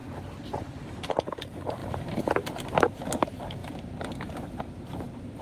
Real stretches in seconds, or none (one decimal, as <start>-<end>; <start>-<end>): 1.1-1.8; 2.3-5.4